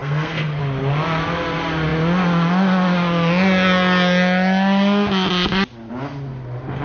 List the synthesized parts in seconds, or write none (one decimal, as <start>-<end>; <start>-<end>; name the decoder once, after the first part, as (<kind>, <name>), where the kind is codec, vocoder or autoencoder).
0.0-0.6 (codec, SNAC)